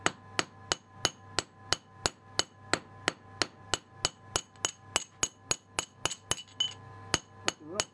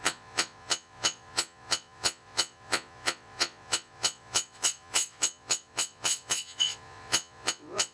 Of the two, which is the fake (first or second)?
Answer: second